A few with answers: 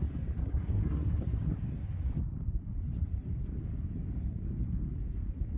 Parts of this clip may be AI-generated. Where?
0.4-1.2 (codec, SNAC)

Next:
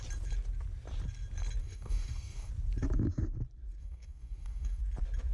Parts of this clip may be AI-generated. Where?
1.6-2.5 (codec, DAC); 3.8-4.8

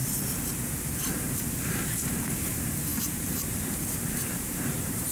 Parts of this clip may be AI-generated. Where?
1.1-5.1 (vocoder, BigVGAN v2)

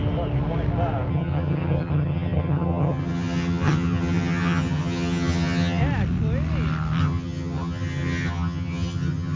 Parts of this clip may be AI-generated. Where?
1.1-5.8 (vocoder, HiFi-GAN); 7.0-9.4